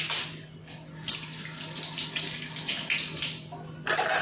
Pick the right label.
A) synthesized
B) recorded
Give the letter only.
B